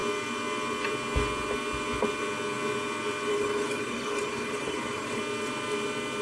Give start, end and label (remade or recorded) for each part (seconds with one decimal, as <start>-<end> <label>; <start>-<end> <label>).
0.0-3.3 recorded; 3.3-5.2 remade; 5.2-6.2 recorded